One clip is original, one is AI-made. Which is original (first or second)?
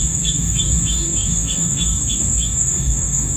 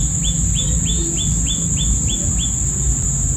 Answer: second